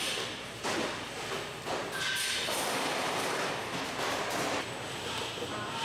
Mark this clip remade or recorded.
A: recorded